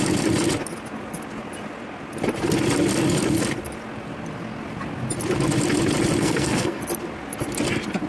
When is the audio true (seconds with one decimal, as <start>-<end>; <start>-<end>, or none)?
0.0-6.2; 6.8-8.1